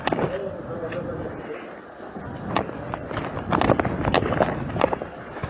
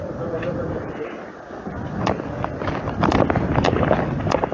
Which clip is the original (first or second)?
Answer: first